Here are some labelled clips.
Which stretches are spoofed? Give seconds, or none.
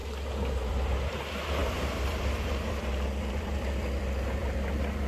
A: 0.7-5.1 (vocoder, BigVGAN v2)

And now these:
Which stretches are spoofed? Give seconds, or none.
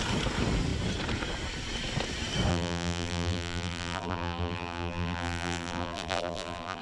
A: 2.5-6.8 (vocoder, BigVGAN v2)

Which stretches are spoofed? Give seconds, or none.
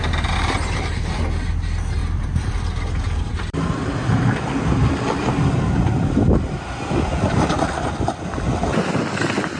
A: 2.0-5.2 (vocoder, BigVGAN v2)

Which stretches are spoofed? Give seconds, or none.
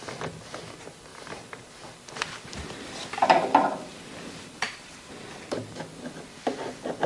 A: 1.1-5.1 (vocoder, BigVGAN v2)